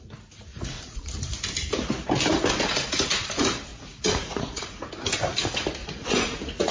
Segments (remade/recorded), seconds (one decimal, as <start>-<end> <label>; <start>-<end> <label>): 0.0-0.5 recorded; 0.5-1.1 remade; 1.1-3.7 recorded; 3.7-4.9 remade; 4.9-5.8 recorded; 5.8-6.7 remade